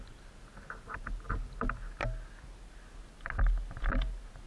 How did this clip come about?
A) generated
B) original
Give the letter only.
B